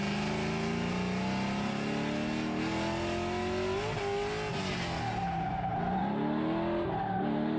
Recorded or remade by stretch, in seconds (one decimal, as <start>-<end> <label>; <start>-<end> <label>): 0.0-7.6 recorded